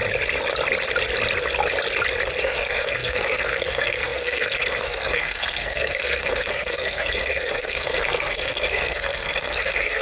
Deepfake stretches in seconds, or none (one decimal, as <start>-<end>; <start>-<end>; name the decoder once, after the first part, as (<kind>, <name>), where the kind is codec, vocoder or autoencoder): 2.4-10.0 (codec, SNAC)